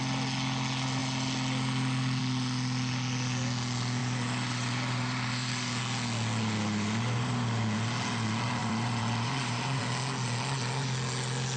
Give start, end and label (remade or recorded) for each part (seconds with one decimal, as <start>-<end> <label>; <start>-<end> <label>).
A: 0.0-4.0 recorded; 4.0-5.8 remade; 5.8-8.6 recorded; 8.6-9.8 remade; 9.8-11.6 recorded